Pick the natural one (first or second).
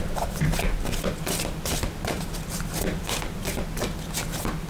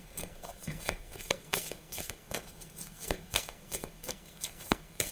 first